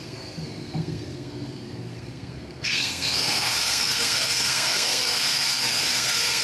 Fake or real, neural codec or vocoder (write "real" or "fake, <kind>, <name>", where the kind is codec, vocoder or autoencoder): fake, codec, SNAC